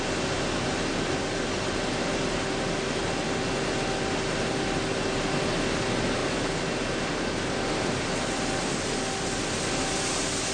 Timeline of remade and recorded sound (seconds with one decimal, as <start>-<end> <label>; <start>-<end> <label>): 0.0-10.5 recorded